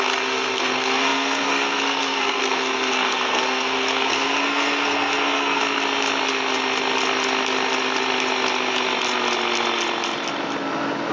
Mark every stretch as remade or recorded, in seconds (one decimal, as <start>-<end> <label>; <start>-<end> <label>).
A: 0.0-5.6 remade; 5.6-11.1 recorded